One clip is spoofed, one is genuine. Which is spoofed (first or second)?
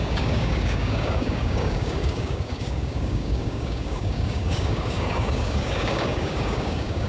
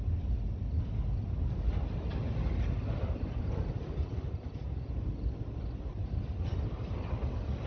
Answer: first